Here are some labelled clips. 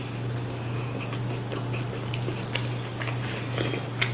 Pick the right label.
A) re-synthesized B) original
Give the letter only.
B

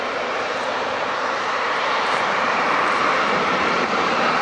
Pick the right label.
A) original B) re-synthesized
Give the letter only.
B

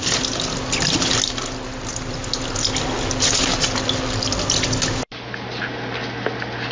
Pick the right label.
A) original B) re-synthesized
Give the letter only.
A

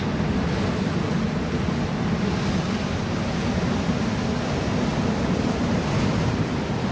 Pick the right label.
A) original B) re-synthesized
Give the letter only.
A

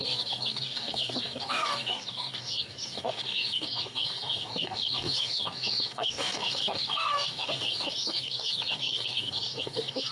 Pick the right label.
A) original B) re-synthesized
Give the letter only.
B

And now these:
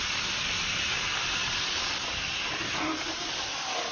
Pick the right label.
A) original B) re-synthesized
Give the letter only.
A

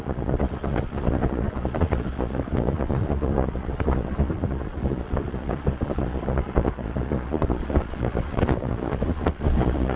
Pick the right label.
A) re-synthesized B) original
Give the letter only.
A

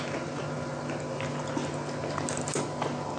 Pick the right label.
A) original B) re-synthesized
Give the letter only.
A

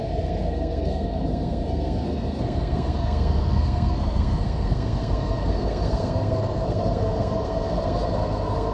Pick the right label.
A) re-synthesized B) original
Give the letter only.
A